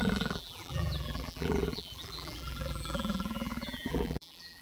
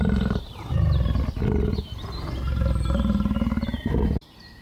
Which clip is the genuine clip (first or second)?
second